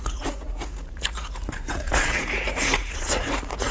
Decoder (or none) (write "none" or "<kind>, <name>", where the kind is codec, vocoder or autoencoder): vocoder, Vocos